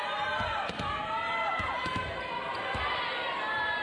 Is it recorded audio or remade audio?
recorded